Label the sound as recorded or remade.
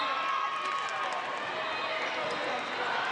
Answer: recorded